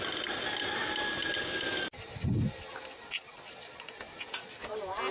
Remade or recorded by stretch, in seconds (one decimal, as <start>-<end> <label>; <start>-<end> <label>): 0.0-1.2 recorded; 1.2-4.3 remade; 4.3-5.1 recorded